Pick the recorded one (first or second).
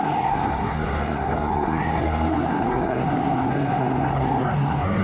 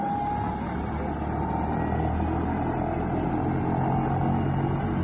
second